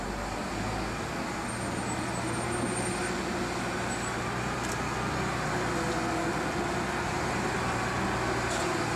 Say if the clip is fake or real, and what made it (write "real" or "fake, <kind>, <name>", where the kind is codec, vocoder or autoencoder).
real